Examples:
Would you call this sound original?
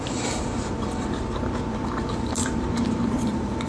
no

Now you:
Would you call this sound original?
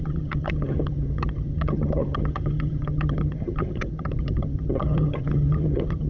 no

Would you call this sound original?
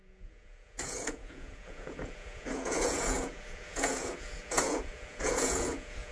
no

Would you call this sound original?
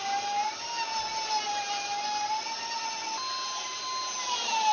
yes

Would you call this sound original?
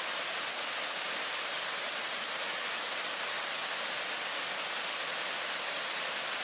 yes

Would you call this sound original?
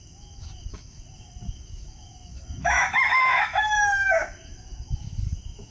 no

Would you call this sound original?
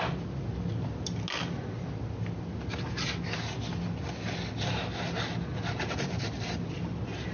yes